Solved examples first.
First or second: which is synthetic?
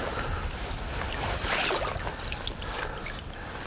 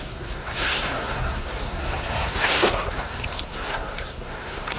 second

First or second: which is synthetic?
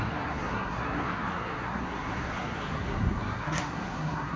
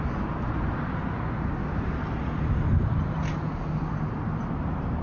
first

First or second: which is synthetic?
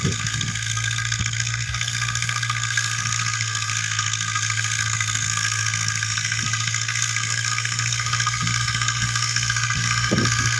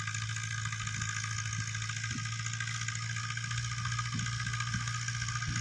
first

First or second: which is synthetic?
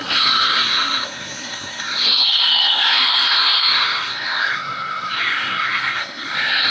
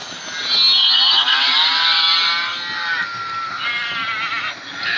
first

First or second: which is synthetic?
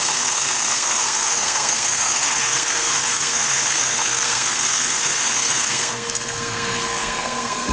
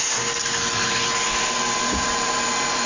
first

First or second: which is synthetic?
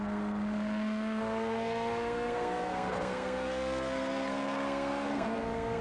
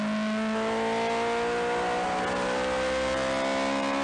first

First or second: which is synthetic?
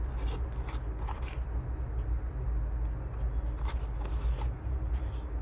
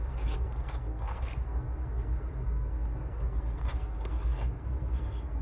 second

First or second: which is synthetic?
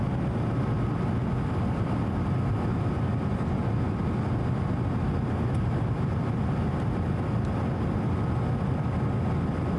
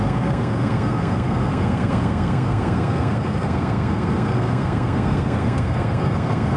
second